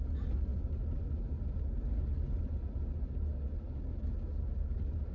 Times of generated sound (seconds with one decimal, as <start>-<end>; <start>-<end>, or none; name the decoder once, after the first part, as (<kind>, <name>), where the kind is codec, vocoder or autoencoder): none